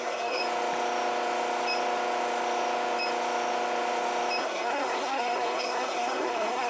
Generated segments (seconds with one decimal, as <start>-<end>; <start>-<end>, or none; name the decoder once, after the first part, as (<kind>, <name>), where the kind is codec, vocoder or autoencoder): 0.0-0.4 (codec, SNAC); 4.4-6.7